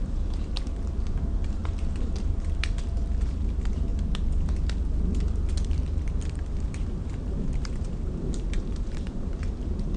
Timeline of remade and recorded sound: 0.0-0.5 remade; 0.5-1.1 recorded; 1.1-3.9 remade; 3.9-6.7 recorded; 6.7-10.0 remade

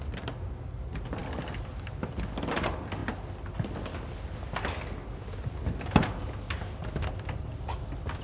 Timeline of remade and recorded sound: 0.0-8.2 recorded

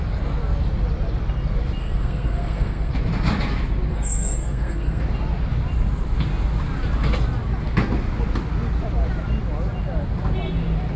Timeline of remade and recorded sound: 0.0-1.8 recorded; 1.8-2.9 remade; 2.9-3.9 recorded; 3.9-5.0 remade; 5.0-11.0 recorded

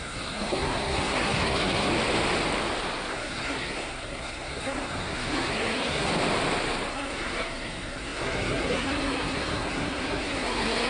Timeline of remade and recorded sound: 0.0-1.9 remade; 1.9-3.1 recorded; 3.1-6.1 remade; 6.1-6.9 recorded; 6.9-10.9 remade

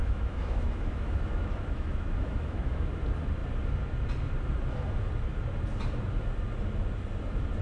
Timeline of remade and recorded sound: 0.0-2.9 remade; 2.9-7.6 recorded

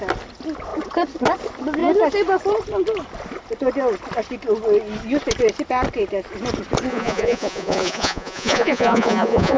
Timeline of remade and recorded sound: 0.0-6.9 recorded; 6.9-9.6 remade